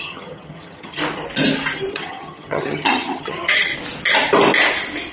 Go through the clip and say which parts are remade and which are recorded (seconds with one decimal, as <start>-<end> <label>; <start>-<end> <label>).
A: 0.0-1.0 remade; 1.0-1.9 recorded; 1.9-3.7 remade; 3.7-5.1 recorded